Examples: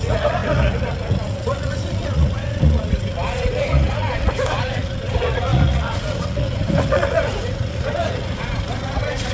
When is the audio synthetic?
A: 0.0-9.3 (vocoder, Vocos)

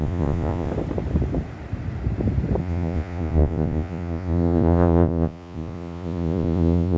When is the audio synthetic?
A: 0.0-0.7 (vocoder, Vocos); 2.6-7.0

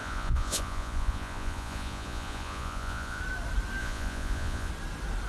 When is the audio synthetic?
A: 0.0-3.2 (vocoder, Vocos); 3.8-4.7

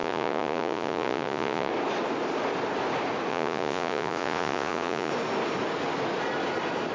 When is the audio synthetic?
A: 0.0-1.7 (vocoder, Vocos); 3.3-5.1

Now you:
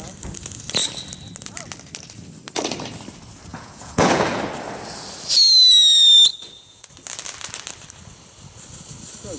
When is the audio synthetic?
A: 3.5-4.4 (vocoder, Vocos); 6.3-6.9